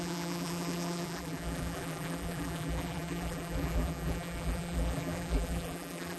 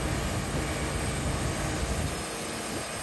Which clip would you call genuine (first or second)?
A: second